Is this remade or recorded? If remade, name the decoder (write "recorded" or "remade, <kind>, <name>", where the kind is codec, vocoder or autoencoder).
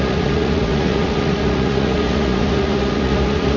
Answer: remade, vocoder, Vocos